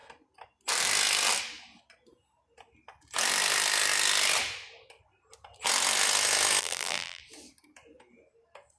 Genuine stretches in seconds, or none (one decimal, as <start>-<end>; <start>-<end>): 0.0-6.6; 7.2-8.8